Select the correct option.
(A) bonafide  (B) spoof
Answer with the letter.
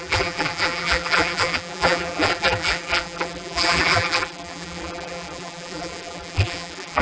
B